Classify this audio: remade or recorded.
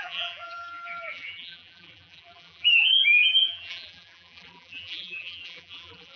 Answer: remade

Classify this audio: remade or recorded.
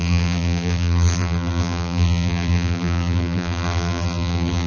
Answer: remade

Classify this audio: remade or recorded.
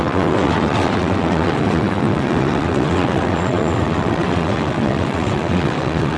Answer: remade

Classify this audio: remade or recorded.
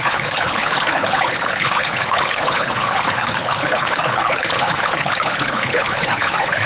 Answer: remade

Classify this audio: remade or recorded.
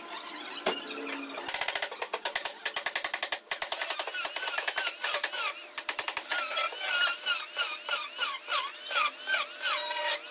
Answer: recorded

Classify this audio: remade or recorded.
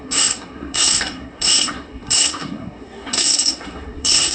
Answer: remade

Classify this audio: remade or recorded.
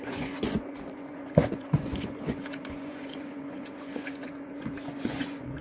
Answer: remade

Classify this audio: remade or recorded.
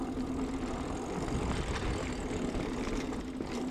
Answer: recorded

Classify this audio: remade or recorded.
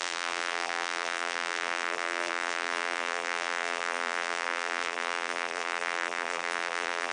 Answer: remade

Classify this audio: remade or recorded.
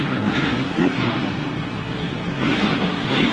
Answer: remade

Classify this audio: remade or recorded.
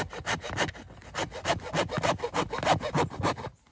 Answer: recorded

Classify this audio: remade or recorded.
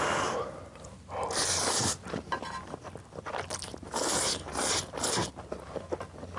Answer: recorded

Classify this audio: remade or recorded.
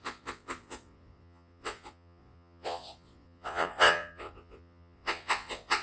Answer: remade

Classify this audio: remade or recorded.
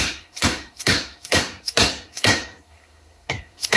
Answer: remade